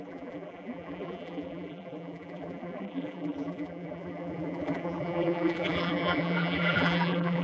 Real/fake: fake